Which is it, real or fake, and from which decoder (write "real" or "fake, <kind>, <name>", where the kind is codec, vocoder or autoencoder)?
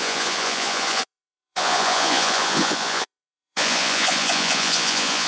fake, vocoder, Vocos